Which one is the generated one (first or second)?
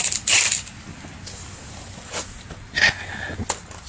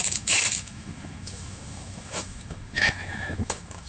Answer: second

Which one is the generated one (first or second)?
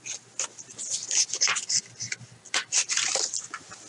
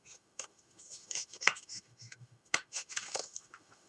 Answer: second